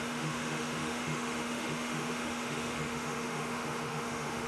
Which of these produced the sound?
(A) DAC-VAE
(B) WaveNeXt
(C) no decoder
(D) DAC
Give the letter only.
A